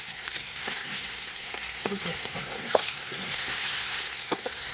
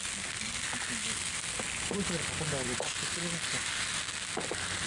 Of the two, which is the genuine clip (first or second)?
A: second